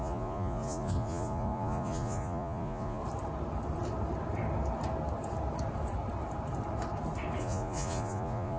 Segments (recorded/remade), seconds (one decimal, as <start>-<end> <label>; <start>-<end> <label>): 0.0-3.0 remade; 3.0-7.4 recorded; 7.4-8.6 remade